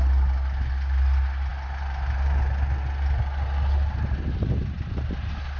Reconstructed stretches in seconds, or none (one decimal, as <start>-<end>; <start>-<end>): none